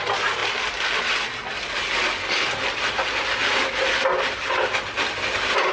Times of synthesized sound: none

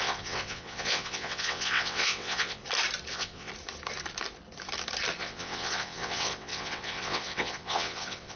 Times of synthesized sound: 0.0-2.6 (vocoder, WaveNeXt); 3.1-3.5; 5.2-8.4